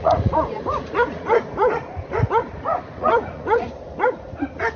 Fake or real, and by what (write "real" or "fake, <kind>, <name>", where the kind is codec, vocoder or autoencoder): fake, vocoder, Vocos